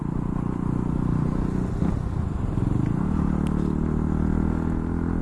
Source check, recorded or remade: recorded